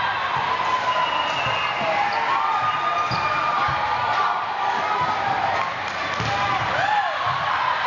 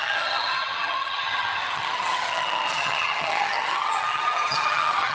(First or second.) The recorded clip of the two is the first